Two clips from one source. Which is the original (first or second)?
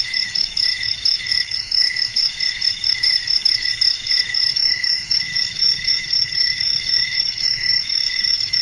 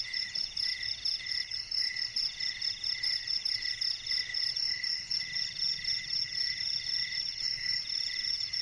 second